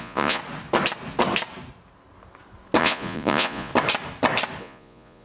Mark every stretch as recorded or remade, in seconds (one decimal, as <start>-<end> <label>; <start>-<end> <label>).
0.0-0.4 remade; 0.4-2.8 recorded; 2.8-3.7 remade; 3.7-4.6 recorded; 4.6-5.2 remade